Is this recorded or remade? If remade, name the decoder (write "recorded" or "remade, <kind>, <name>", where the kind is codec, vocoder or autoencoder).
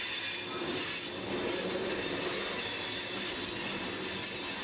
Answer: recorded